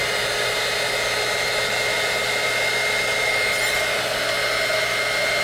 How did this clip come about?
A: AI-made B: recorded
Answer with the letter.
B